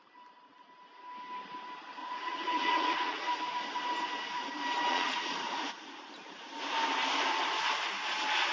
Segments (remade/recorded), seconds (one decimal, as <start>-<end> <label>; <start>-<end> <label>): 0.0-2.0 recorded; 2.0-3.4 remade; 3.4-4.9 recorded; 4.9-6.0 remade; 6.0-8.5 recorded